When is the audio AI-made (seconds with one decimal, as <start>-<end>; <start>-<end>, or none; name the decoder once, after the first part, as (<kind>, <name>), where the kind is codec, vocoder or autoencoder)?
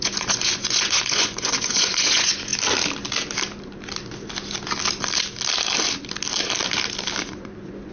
0.0-2.5 (vocoder, Vocos); 7.2-7.9